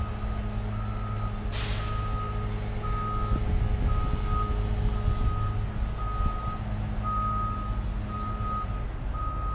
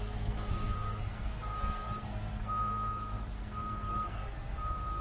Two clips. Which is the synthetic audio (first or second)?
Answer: second